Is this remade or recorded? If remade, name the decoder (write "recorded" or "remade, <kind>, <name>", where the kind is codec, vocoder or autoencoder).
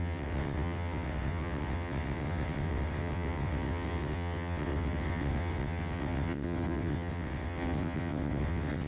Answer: remade, vocoder, WaveNeXt